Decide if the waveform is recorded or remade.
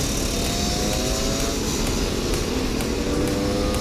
recorded